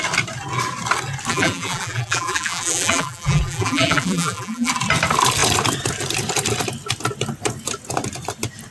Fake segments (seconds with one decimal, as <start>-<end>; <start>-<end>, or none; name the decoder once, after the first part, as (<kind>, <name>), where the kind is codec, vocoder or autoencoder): 1.3-4.7 (vocoder, BigVGAN v2)